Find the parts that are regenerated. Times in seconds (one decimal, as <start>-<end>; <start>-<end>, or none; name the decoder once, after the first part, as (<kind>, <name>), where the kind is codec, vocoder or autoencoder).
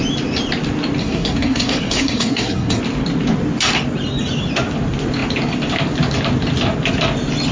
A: 1.0-2.8 (codec, SNAC)